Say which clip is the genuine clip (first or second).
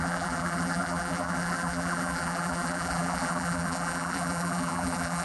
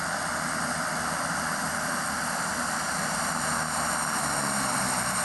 second